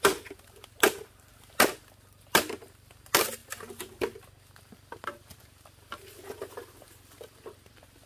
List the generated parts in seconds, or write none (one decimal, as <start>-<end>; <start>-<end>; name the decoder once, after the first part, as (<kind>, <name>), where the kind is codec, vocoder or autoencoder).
none